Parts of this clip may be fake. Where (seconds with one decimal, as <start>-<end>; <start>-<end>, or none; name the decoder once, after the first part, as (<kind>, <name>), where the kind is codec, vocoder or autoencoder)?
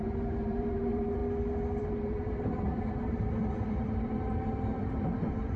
0.0-1.2 (vocoder, BigVGAN v2); 1.8-5.6